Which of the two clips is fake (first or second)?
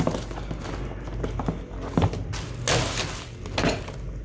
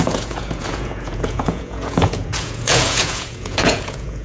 second